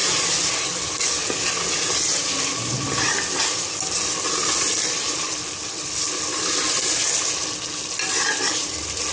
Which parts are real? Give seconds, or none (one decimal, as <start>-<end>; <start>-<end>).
0.0-9.1